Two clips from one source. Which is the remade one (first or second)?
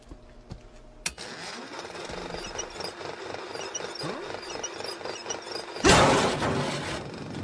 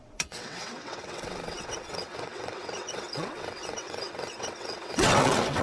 second